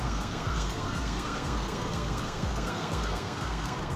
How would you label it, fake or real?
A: fake